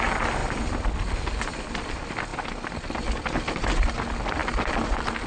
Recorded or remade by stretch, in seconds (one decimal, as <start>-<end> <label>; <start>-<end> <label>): 0.0-5.3 recorded